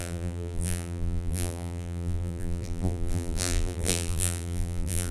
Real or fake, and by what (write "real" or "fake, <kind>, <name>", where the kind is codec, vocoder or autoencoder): fake, vocoder, BigVGAN v2